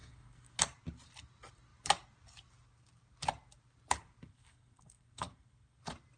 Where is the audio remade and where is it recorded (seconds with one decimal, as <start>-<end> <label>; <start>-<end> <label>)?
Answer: 0.0-0.6 remade; 0.6-4.3 recorded; 4.3-5.8 remade; 5.8-6.2 recorded